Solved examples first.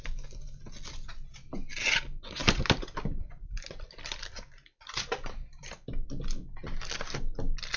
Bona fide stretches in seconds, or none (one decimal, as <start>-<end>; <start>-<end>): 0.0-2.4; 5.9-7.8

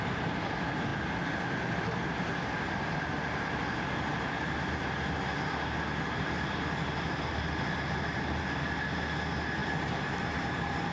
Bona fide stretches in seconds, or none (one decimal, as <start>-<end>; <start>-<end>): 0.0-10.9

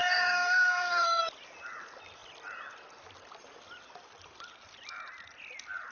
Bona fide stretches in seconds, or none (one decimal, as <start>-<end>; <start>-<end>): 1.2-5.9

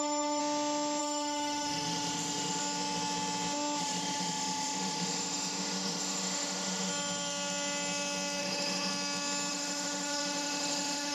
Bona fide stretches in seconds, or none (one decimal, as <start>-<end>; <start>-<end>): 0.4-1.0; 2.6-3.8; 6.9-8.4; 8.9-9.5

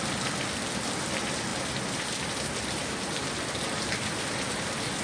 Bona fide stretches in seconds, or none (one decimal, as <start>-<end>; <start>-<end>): 0.0-5.0